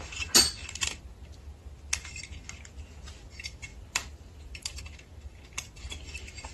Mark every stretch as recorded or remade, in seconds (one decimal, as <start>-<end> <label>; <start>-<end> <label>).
0.0-0.6 recorded; 0.6-1.1 remade; 1.1-3.7 recorded; 3.7-4.8 remade; 4.8-6.5 recorded